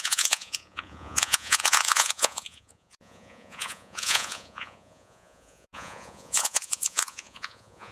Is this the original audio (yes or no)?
no